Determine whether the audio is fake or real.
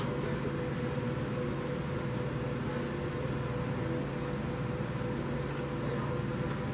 real